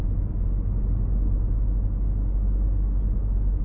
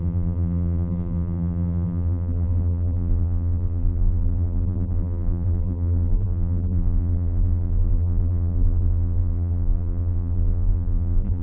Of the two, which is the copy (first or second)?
second